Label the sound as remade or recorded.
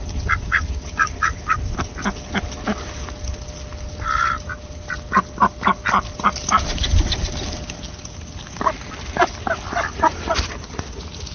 recorded